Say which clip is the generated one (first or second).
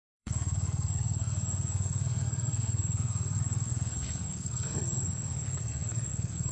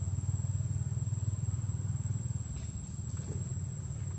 first